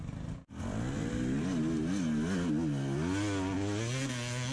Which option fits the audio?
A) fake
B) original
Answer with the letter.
B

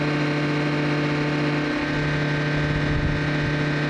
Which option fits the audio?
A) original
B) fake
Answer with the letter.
A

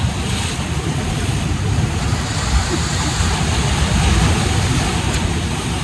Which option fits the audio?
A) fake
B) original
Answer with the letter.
B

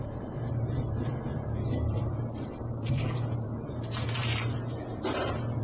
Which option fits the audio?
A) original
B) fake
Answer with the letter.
B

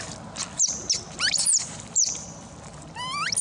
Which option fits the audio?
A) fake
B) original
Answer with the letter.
A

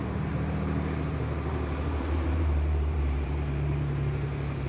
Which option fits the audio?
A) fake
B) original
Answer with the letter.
A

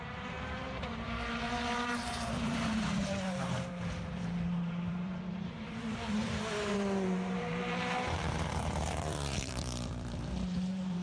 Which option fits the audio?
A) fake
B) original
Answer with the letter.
A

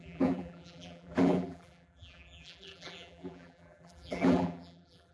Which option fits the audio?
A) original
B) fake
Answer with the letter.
B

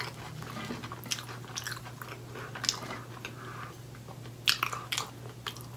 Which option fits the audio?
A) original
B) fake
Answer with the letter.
A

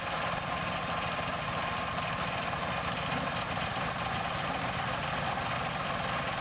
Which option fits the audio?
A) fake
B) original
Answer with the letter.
A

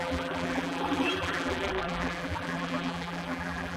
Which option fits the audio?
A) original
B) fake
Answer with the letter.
B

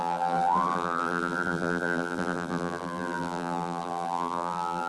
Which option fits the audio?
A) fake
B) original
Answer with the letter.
A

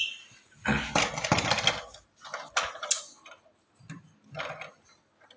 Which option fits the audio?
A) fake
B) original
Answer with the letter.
B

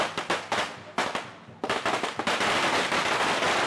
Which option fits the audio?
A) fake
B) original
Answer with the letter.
B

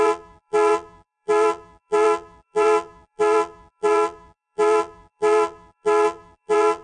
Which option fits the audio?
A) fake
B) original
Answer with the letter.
A